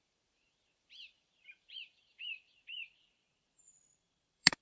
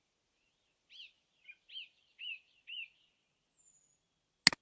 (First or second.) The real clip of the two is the second